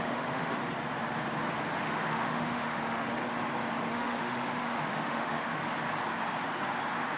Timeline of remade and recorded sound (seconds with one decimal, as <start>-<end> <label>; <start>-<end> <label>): 0.0-0.6 remade; 0.6-1.8 recorded; 1.8-3.2 remade; 3.2-3.9 recorded; 3.9-5.6 remade; 5.6-7.2 recorded